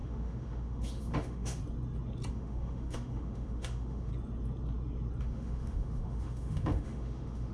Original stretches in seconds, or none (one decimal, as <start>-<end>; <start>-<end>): 1.6-2.3; 4.1-5.2